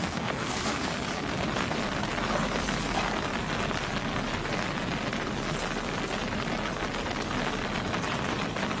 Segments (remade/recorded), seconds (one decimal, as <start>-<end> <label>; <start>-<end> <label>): 0.0-0.9 remade; 0.9-8.8 recorded